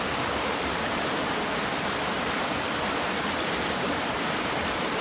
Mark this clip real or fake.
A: fake